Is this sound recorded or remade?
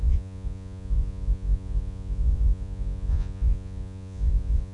remade